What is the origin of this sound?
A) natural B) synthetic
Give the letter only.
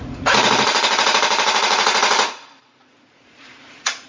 B